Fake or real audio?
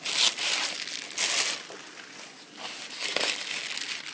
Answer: real